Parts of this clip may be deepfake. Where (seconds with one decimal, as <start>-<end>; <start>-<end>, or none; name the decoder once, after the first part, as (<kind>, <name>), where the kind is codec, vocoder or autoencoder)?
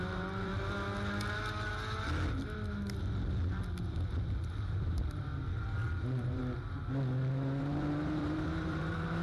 0.0-0.5 (vocoder, BigVGAN v2); 4.7-5.3; 6.0-6.4; 7.3-9.2